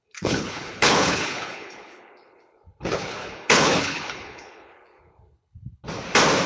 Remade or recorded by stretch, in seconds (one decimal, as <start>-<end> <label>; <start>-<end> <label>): 0.0-5.8 remade; 5.8-6.5 recorded